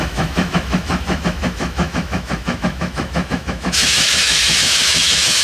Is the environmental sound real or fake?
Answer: fake